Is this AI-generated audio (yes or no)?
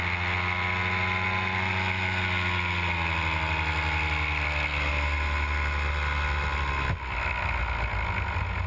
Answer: no